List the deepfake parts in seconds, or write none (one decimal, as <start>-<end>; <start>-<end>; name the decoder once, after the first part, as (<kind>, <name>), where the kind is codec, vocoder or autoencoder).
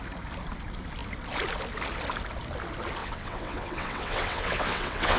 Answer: 3.0-5.2 (vocoder, WaveNeXt)